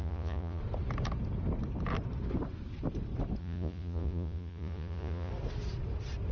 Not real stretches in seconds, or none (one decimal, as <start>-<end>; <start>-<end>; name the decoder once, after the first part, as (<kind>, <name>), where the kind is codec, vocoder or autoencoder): 0.0-0.6 (vocoder, Vocos); 3.4-5.3